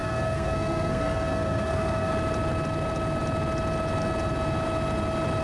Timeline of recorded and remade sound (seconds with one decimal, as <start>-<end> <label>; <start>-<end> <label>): 0.0-2.1 remade; 2.1-5.4 recorded